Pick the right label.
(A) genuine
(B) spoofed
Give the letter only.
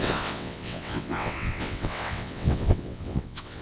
B